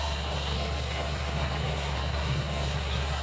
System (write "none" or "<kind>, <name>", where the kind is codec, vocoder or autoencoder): codec, SNAC